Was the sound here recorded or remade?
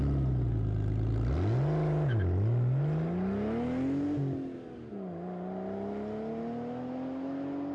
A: recorded